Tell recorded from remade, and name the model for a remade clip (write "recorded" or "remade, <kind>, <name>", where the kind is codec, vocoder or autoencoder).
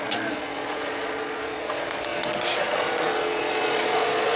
remade, vocoder, Vocos